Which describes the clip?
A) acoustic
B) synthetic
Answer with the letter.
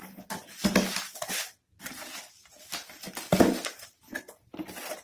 A